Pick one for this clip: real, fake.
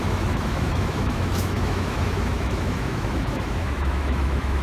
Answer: fake